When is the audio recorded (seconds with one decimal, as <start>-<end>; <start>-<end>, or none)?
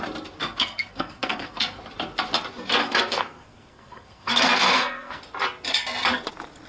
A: 0.0-0.4; 1.8-2.8; 5.2-6.7